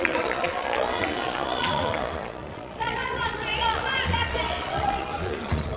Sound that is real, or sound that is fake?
fake